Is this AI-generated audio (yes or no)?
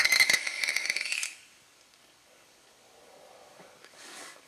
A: yes